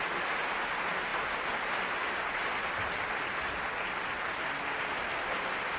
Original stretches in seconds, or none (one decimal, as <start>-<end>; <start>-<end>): 0.0-5.8

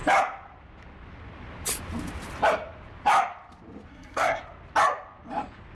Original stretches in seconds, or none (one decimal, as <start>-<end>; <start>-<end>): 0.0-3.9; 4.4-5.7

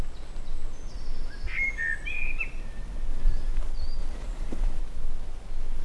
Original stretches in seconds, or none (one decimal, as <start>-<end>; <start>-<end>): 0.0-3.1; 3.6-4.0; 4.8-5.8

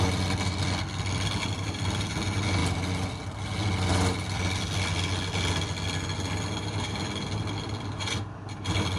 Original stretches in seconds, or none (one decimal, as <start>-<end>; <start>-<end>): 0.0-9.0

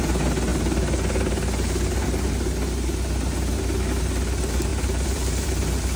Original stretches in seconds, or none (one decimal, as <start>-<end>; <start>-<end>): 0.0-4.7; 5.5-6.0

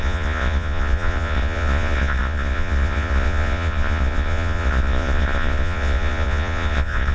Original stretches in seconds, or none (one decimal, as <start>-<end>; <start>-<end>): none

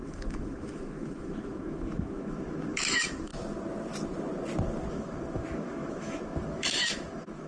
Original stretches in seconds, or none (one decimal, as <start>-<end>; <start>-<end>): 3.3-4.9